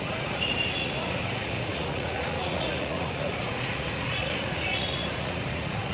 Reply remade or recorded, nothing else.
remade